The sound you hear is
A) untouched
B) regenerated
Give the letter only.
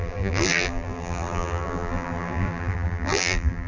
B